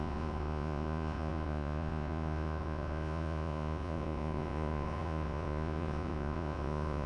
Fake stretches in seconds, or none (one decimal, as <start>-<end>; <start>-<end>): 0.0-7.1